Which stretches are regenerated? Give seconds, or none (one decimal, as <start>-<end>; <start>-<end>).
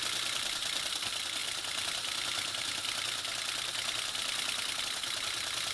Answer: none